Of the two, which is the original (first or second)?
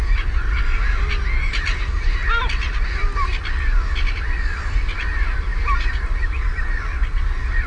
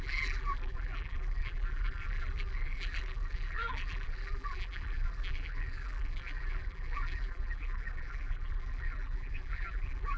first